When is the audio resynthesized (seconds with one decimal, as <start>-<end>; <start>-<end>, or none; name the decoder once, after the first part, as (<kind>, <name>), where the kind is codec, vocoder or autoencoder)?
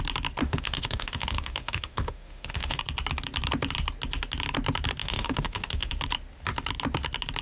0.4-2.8 (autoencoder, DAC-VAE); 5.0-5.9